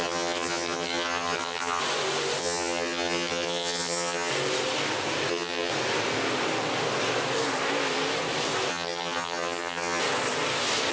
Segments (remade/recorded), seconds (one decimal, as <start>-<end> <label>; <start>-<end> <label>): 0.0-1.8 remade; 1.8-2.4 recorded; 2.4-4.3 remade; 4.3-5.3 recorded; 5.3-5.7 remade; 5.7-8.7 recorded; 8.7-10.0 remade; 10.0-10.9 recorded